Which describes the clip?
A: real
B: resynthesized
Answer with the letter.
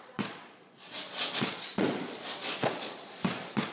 B